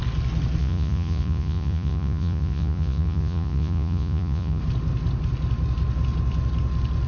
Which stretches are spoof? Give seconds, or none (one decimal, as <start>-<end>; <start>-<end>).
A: 0.6-4.6